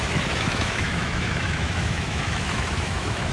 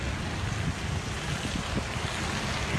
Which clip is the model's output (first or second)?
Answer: first